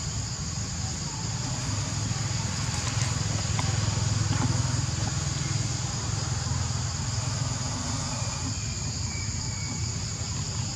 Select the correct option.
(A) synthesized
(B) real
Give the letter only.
B